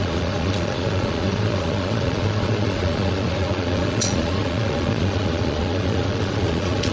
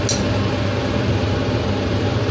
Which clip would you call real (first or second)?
second